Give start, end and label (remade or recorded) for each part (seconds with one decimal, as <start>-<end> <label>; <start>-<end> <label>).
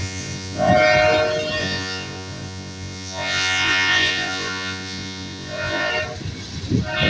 0.0-0.7 remade; 0.7-1.6 recorded; 1.6-5.9 remade; 5.9-7.1 recorded